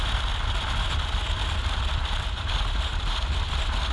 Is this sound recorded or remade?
remade